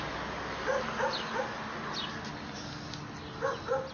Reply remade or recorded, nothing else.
recorded